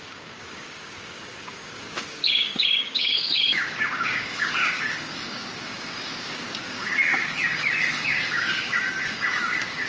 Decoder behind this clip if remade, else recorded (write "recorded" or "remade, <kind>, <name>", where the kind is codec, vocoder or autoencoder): remade, codec, DAC